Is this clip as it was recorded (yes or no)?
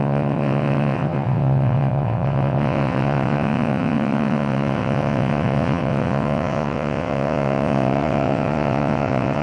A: no